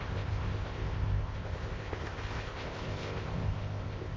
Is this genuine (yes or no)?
no